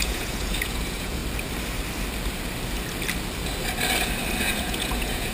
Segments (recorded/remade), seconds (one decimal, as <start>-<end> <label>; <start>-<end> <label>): 0.0-1.2 remade; 1.2-4.4 recorded; 4.4-5.3 remade